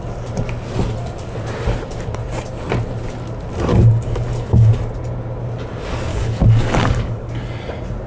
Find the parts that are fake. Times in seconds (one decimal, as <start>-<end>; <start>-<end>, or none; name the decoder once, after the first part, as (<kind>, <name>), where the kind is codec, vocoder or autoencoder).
3.7-4.7 (codec, DAC); 6.1-7.3